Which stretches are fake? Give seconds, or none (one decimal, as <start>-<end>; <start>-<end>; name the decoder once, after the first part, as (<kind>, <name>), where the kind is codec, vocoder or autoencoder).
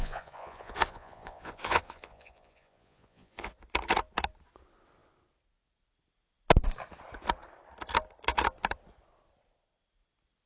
0.0-3.5 (vocoder, Vocos)